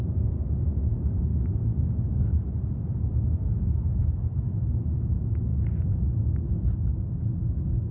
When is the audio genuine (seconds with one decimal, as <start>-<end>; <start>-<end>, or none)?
0.0-4.0; 5.1-7.9

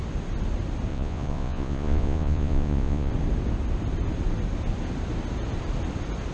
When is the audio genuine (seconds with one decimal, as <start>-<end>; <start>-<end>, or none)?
0.0-0.9; 3.1-6.3